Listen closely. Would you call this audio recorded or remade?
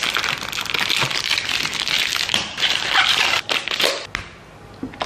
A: recorded